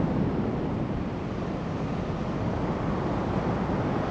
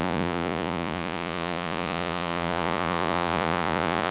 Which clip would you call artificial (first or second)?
second